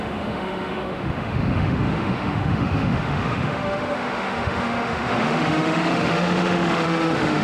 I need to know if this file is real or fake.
fake